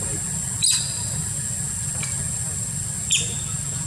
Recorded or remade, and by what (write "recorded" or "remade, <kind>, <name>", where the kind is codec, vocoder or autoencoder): recorded